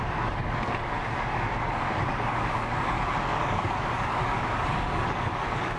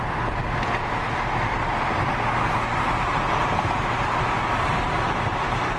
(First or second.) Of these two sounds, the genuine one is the second